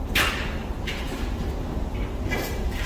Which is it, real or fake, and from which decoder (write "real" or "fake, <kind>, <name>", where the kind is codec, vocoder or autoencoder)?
real